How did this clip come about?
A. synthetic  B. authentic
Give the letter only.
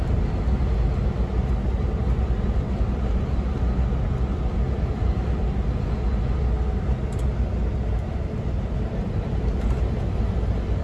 B